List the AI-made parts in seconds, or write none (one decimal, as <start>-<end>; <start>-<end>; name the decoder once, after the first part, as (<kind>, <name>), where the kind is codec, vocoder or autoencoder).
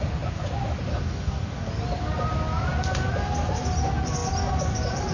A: 0.9-1.7 (codec, DAC)